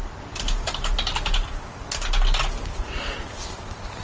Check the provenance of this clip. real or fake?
real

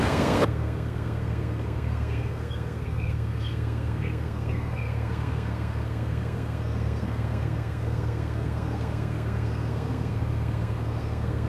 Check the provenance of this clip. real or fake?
fake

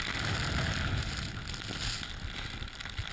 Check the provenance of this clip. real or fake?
real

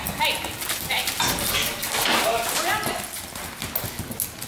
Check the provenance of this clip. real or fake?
real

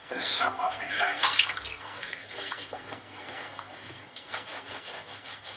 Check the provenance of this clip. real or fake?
fake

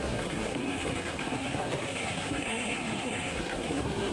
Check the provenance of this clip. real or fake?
fake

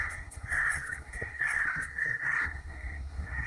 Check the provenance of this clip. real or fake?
fake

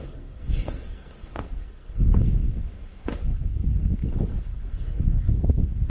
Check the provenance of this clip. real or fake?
fake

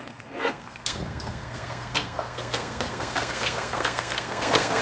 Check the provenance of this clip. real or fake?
fake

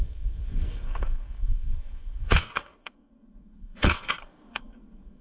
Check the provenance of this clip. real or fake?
fake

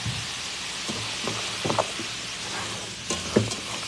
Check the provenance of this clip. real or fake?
real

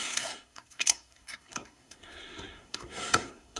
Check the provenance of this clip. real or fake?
fake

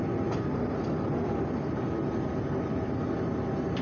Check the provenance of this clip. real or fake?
real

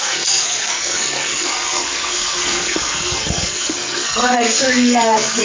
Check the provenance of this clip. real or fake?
fake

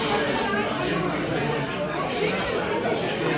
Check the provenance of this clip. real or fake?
real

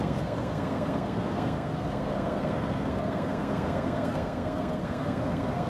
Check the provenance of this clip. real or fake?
fake